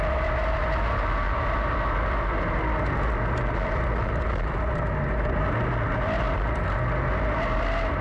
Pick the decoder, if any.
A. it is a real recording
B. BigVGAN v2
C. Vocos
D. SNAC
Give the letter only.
A